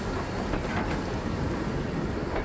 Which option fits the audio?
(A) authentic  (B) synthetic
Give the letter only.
A